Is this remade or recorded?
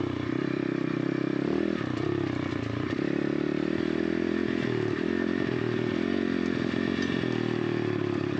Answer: remade